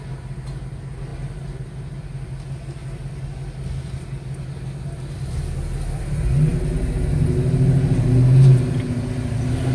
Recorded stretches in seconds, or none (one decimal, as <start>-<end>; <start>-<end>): 0.0-9.7